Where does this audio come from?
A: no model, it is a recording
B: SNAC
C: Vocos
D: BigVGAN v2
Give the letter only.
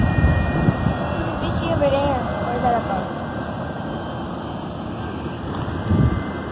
D